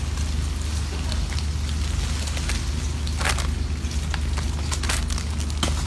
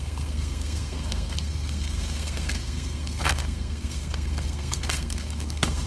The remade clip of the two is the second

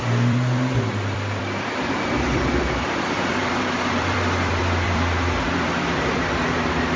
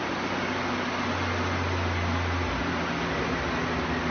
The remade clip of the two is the first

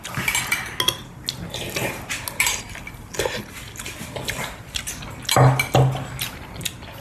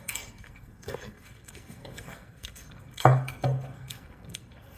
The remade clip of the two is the second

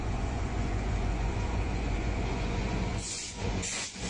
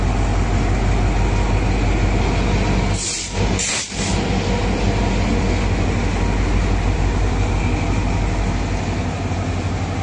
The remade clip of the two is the first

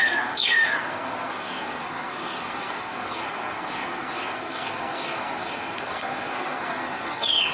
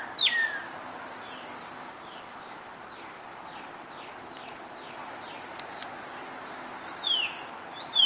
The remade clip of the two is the first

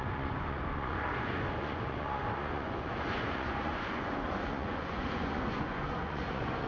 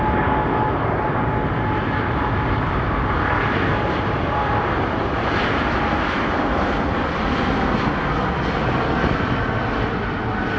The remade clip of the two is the first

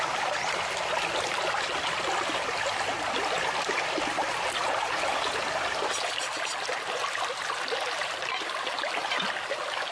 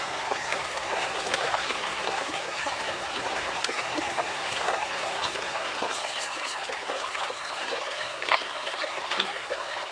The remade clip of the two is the second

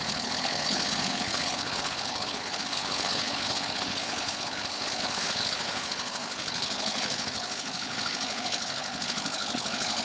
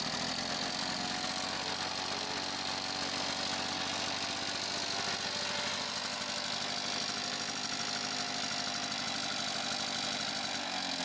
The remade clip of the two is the first